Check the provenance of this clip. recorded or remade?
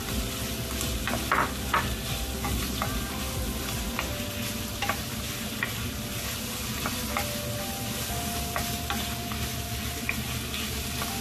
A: recorded